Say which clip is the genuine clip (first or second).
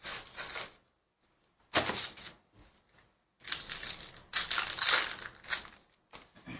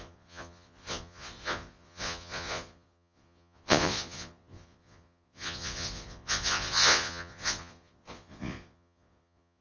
first